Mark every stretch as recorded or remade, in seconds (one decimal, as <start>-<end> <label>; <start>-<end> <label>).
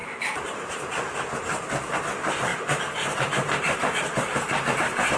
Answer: 0.0-1.0 remade; 1.0-2.5 recorded; 2.5-5.2 remade